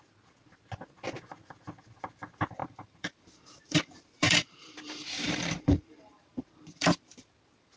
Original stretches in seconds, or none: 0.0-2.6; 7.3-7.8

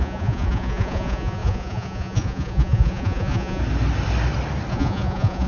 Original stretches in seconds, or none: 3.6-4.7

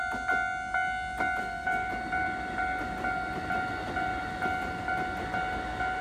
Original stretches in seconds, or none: 0.0-1.4; 1.9-6.0